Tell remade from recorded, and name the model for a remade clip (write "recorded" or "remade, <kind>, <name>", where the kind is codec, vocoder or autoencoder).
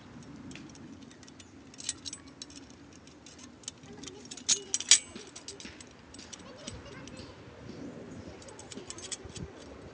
recorded